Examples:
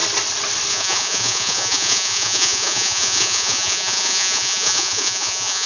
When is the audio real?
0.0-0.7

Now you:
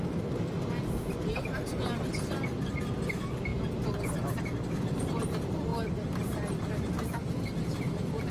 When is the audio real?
0.0-8.3